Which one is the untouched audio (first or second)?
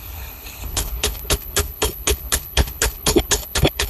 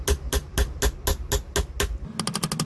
second